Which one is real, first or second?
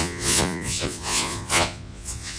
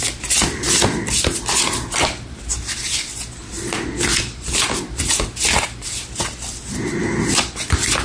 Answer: second